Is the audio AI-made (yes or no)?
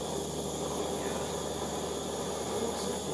no